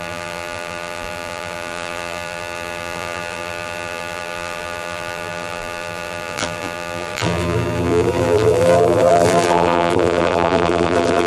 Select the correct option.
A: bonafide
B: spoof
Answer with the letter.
B